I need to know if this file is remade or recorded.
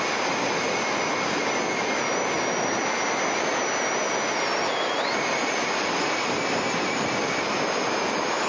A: recorded